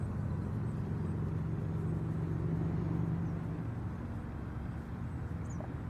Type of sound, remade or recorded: recorded